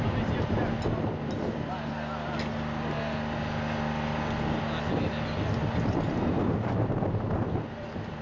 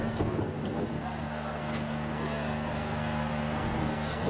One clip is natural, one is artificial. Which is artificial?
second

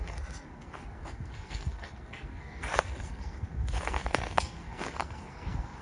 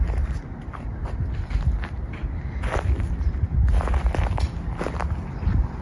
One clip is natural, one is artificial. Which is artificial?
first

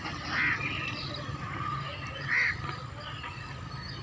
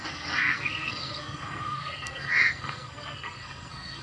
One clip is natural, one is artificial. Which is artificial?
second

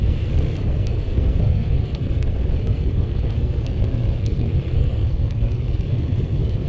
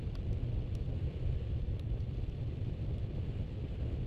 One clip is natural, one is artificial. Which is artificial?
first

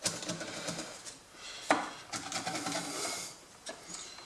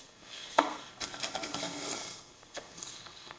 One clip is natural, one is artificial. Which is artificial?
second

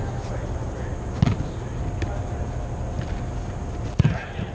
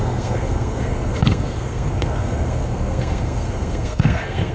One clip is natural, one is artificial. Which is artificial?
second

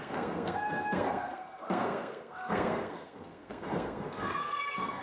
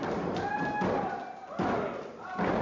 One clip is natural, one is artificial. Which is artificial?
first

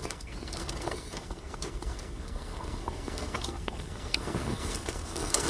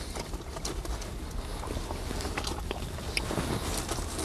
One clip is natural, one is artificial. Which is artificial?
first